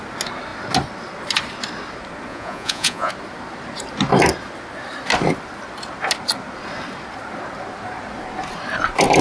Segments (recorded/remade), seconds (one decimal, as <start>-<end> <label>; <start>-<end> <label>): 0.0-2.3 recorded; 2.3-3.1 remade; 3.1-9.2 recorded